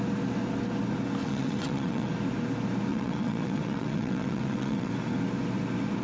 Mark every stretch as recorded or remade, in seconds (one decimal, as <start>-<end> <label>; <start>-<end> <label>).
0.0-1.2 recorded; 1.2-2.1 remade; 2.1-2.9 recorded; 2.9-4.9 remade; 4.9-6.0 recorded